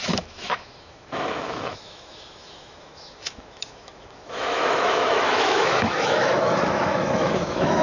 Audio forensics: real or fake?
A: fake